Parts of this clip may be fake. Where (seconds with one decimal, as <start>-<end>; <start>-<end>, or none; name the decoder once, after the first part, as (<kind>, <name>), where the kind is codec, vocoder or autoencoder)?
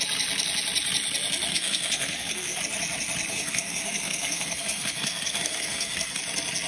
1.5-2.6 (codec, SNAC); 3.3-6.2